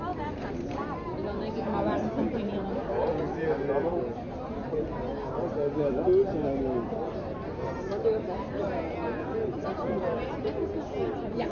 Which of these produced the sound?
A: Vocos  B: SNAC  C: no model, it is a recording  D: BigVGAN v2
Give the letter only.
C